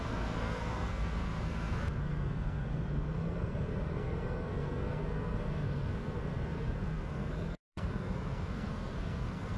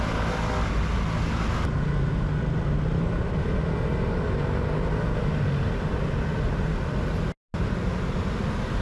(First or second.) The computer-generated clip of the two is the first